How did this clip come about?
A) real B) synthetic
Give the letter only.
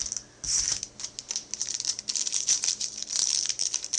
A